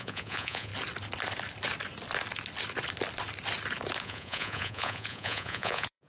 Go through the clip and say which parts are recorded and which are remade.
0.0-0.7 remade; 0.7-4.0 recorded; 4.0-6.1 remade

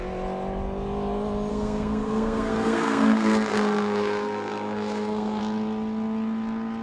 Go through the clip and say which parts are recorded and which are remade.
0.0-1.5 recorded; 1.5-5.4 remade; 5.4-6.8 recorded